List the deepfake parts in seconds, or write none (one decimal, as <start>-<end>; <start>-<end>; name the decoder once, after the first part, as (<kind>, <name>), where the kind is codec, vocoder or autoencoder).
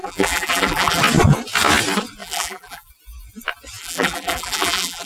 0.0-1.0 (vocoder, BigVGAN v2); 2.2-2.9; 3.8-5.1